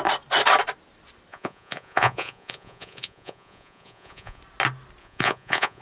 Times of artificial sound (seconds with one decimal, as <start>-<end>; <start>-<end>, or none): 1.3-4.4; 5.0-5.8